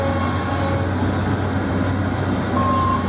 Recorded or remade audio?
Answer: recorded